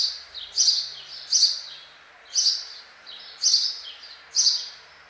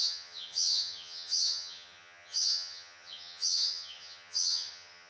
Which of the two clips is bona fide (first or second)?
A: first